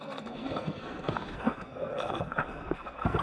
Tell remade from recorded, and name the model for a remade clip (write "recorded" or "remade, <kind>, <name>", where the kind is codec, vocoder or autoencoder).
remade, codec, SNAC